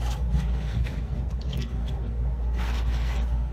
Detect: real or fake fake